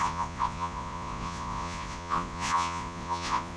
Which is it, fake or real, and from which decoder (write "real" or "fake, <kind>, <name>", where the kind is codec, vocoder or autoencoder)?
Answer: fake, vocoder, Vocos